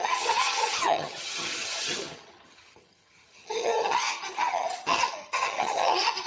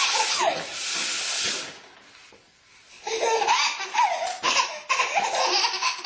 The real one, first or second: second